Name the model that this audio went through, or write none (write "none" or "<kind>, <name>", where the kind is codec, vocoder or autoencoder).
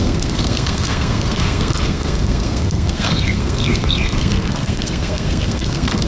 codec, SNAC